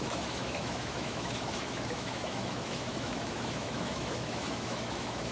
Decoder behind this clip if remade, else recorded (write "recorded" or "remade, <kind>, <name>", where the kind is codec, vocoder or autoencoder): remade, autoencoder, DAC-VAE